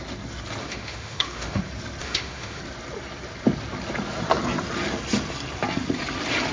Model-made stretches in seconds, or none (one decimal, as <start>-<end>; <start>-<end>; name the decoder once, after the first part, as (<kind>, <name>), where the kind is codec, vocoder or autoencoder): 0.6-1.6 (autoencoder, DAC-VAE); 2.0-2.6